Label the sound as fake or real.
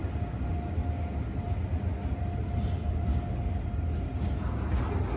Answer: real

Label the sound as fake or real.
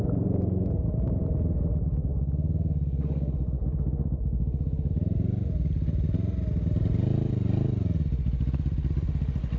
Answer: real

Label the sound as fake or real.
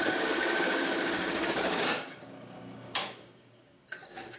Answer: fake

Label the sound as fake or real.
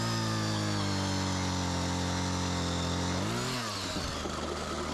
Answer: real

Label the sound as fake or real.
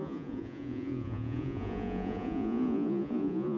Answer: fake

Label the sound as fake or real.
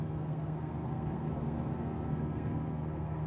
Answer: fake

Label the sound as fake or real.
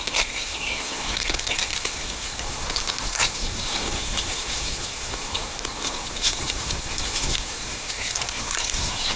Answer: fake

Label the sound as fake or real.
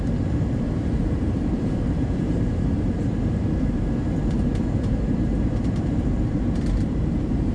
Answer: fake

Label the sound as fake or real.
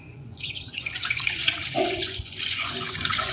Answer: fake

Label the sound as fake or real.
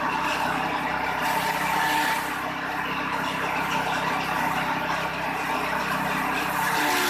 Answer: real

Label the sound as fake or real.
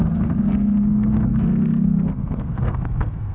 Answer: fake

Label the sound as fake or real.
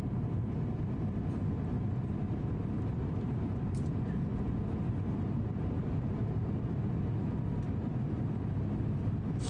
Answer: real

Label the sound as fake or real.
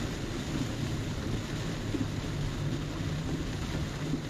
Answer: real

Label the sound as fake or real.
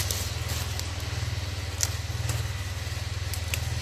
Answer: real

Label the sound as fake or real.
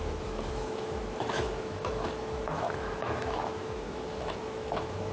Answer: fake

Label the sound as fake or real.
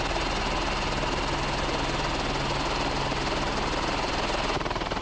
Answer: real